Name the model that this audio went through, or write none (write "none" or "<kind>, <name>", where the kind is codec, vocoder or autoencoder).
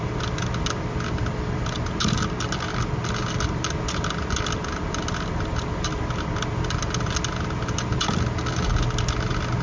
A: none